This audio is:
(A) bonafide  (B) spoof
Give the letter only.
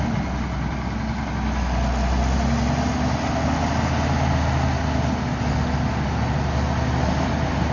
A